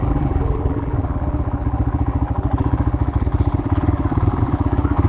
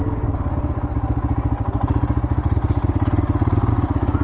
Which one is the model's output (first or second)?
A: first